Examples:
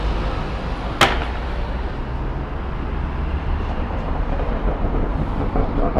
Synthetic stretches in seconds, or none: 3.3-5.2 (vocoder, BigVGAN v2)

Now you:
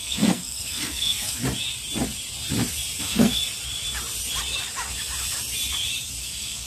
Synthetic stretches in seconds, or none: 0.0-1.4 (codec, SNAC); 3.0-3.4; 6.2-6.7